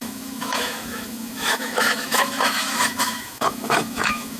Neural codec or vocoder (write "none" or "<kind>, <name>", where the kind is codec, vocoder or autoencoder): autoencoder, DAC-VAE